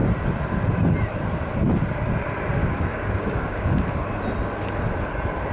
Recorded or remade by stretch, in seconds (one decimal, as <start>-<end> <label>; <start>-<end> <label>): 0.0-2.6 recorded; 2.6-3.7 remade; 3.7-5.5 recorded